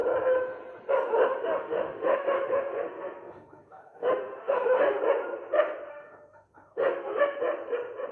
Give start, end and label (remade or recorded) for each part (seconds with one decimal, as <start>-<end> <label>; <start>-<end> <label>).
0.0-1.3 recorded; 1.3-5.0 remade; 5.0-5.9 recorded; 5.9-7.4 remade; 7.4-8.1 recorded